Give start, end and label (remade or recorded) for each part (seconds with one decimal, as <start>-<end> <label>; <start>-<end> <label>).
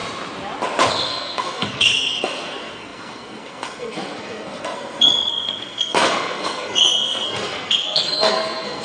0.0-0.9 recorded; 0.9-8.8 remade